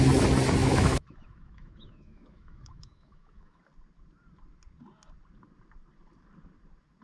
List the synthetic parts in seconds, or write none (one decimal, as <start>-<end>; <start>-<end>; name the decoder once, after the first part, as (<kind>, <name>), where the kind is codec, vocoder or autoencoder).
0.6-3.6 (autoencoder, DAC-VAE)